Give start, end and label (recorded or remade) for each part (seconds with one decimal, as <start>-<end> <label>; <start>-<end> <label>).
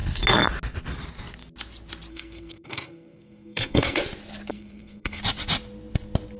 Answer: 0.0-2.1 recorded; 2.1-4.0 remade; 4.0-4.5 recorded; 4.5-5.2 remade; 5.2-6.4 recorded